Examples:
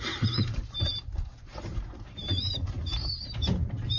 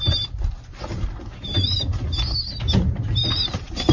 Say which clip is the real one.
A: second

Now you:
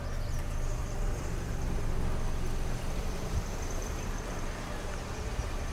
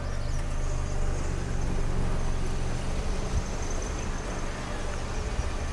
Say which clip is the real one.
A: second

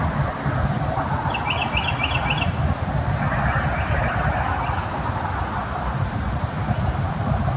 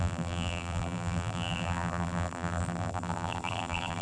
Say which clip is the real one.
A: first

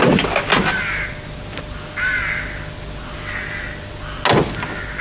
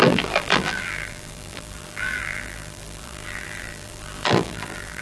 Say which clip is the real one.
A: first